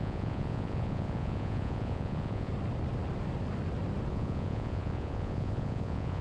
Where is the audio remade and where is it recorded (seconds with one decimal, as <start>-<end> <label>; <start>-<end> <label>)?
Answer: 0.0-2.5 remade; 2.5-4.1 recorded; 4.1-6.2 remade